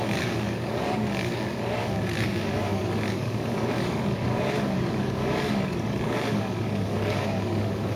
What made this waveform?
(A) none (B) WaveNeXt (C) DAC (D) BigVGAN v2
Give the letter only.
C